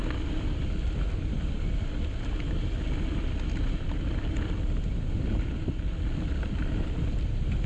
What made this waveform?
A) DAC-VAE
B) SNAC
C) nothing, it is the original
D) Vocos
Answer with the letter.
C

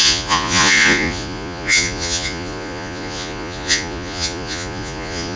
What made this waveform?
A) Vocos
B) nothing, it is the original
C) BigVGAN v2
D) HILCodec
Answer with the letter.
A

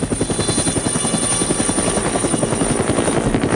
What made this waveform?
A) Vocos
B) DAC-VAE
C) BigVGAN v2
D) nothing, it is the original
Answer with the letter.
D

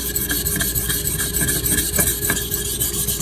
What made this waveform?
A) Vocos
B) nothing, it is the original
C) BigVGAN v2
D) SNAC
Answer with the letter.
B